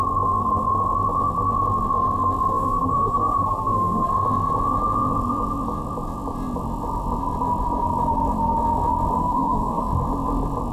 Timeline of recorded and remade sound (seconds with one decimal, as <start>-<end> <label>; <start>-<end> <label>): 0.0-2.5 recorded; 2.5-4.1 remade; 4.1-9.2 recorded; 9.2-9.8 remade; 9.8-10.7 recorded